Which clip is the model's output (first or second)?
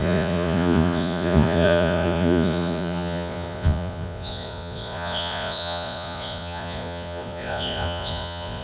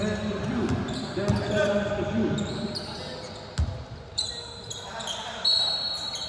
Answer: first